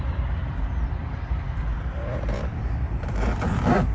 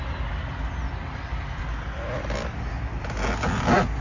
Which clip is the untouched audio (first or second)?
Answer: second